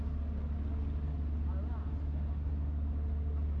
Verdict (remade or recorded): recorded